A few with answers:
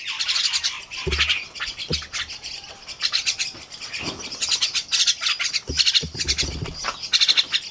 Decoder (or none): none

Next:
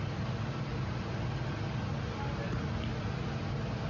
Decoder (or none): none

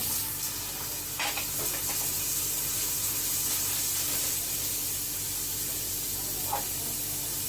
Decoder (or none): none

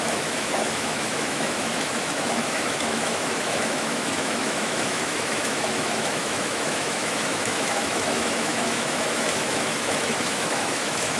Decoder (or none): autoencoder, DAC-VAE